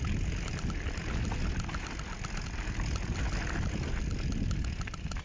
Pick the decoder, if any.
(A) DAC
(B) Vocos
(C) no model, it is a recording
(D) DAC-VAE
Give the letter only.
C